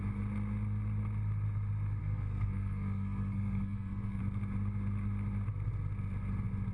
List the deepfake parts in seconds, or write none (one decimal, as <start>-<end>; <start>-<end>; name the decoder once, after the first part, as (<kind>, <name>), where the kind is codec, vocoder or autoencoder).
2.0-4.2 (codec, SNAC)